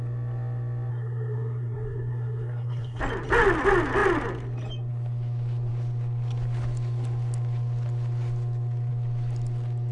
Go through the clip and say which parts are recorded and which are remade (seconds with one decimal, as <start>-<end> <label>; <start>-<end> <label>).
0.0-0.9 recorded; 0.9-3.0 remade; 3.0-9.9 recorded